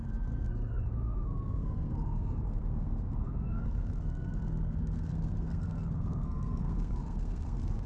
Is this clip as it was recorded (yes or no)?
no